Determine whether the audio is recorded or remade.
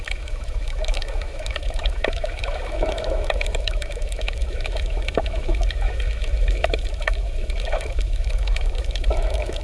remade